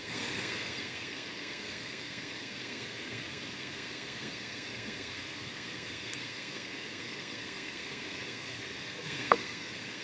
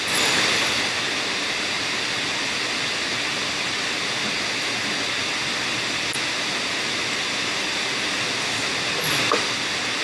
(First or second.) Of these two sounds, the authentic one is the second